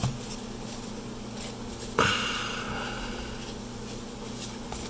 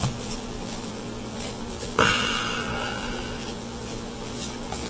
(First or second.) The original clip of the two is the first